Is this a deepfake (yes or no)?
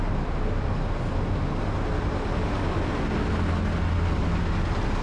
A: no